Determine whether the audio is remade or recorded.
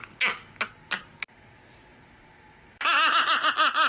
recorded